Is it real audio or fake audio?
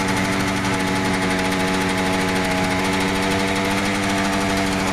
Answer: real